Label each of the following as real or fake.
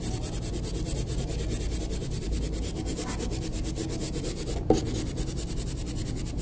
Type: real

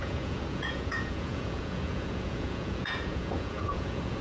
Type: fake